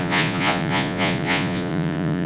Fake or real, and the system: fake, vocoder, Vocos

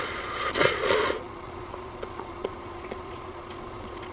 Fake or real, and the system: fake, vocoder, Vocos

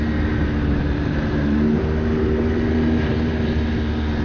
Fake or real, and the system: real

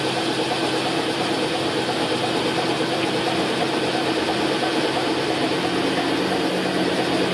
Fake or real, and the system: real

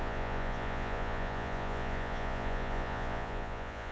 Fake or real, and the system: fake, vocoder, Vocos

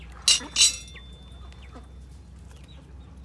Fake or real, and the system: real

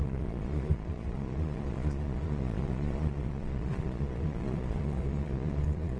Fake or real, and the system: fake, vocoder, Vocos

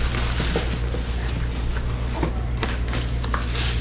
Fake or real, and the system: real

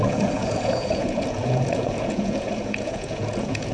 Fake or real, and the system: fake, vocoder, Vocos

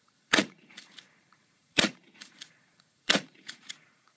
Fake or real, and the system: fake, vocoder, Vocos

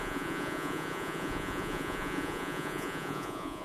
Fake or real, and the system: fake, vocoder, Vocos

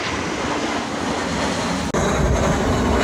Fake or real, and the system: real